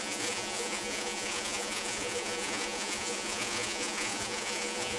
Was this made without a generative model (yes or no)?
no